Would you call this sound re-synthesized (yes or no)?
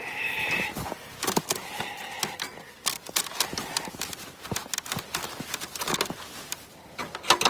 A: no